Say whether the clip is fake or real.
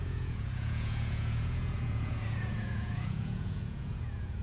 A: fake